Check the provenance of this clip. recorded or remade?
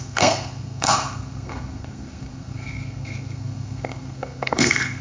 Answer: remade